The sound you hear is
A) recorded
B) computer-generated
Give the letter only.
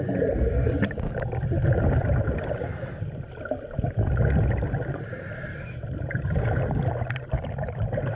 A